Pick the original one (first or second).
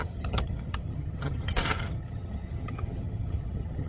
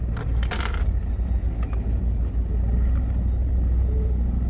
second